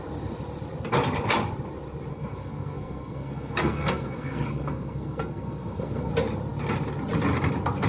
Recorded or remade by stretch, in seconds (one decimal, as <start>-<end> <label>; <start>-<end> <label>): 0.0-2.1 recorded; 2.1-6.1 remade; 6.1-7.9 recorded